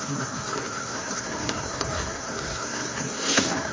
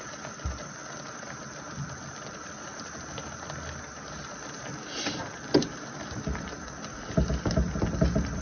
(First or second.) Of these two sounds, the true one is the second